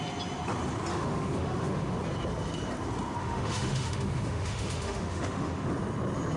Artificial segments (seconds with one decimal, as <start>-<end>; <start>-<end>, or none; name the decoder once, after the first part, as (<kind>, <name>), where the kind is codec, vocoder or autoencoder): 0.9-2.0 (autoencoder, DAC-VAE); 3.2-5.7